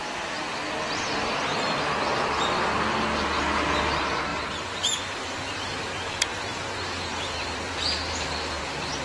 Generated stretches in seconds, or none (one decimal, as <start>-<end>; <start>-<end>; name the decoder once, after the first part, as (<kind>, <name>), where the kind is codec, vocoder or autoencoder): 4.3-5.7 (vocoder, BigVGAN v2); 6.3-9.0